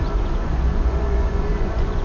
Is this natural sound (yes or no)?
no